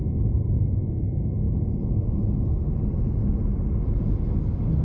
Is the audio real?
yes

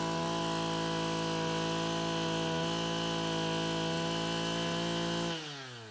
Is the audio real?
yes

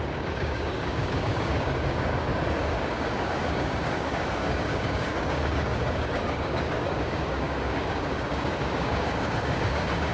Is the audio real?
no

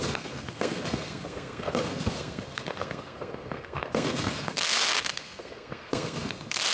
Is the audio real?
no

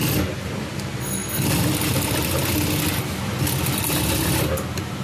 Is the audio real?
yes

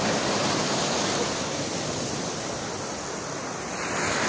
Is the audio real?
yes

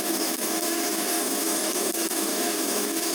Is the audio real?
no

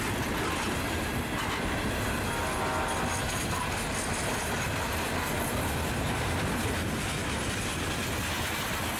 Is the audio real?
yes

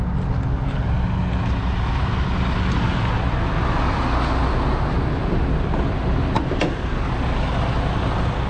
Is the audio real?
yes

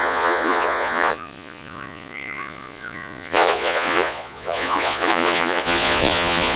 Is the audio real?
no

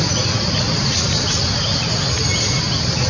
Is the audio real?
yes